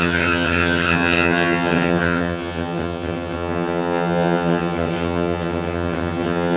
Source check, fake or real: fake